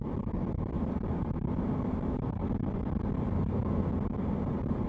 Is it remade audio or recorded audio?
recorded